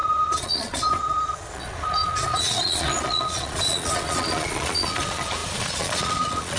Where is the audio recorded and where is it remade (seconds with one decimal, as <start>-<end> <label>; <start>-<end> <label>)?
0.0-6.6 remade